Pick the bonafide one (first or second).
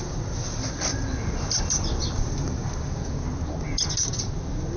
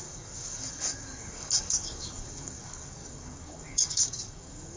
first